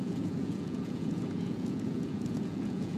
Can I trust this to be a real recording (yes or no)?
no